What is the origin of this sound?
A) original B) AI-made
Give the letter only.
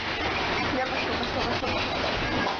A